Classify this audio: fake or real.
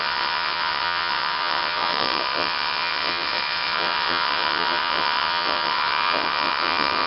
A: fake